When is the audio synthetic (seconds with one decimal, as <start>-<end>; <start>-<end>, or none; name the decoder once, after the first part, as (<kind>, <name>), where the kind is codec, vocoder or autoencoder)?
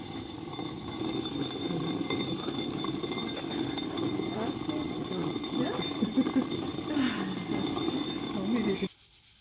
4.8-5.5 (vocoder, WaveNeXt)